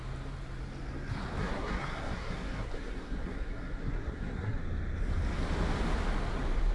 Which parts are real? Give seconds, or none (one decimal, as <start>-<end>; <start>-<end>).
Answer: 0.0-1.4; 4.6-6.7